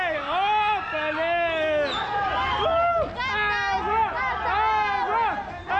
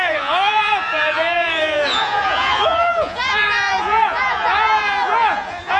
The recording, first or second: first